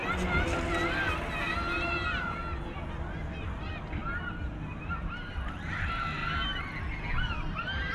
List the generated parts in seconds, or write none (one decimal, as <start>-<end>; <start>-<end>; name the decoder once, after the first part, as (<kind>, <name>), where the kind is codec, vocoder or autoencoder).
1.1-2.4 (vocoder, BigVGAN v2); 3.6-4.0; 4.8-6.2; 7.3-7.9